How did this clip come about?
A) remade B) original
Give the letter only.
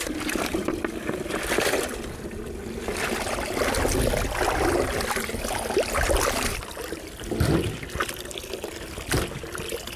B